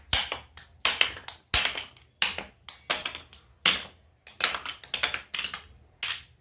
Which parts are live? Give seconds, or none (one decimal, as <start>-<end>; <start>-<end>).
0.0-6.4